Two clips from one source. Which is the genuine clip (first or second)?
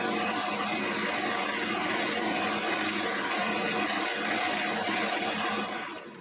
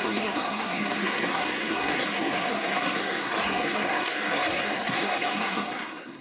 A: first